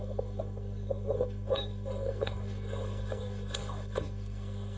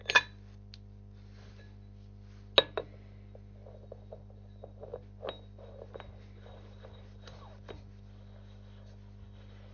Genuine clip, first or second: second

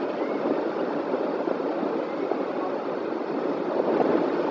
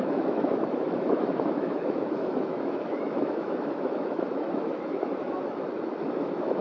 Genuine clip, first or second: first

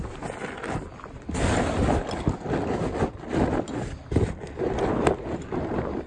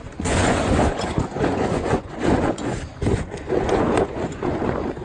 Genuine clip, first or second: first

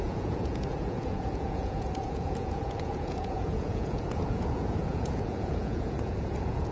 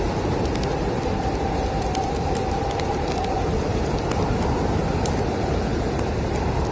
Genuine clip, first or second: second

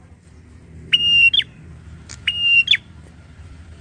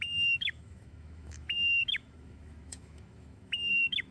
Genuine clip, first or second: first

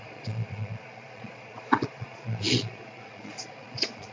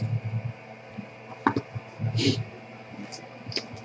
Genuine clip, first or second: second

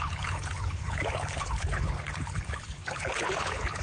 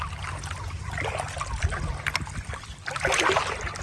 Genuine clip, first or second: second